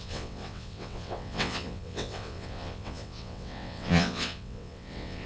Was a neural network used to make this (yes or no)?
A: yes